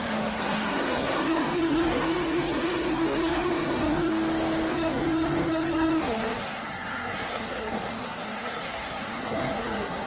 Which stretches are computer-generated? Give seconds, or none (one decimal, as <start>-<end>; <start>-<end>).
0.0-4.1; 4.7-10.1